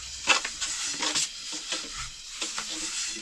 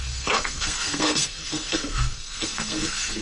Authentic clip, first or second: first